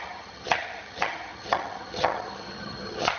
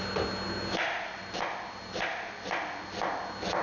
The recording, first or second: second